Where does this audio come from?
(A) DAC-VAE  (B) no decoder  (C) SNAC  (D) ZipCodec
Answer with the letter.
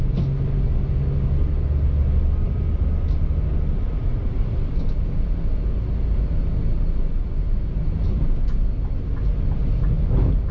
B